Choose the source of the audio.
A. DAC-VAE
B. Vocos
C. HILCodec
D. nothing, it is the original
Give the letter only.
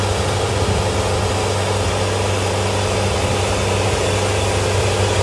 D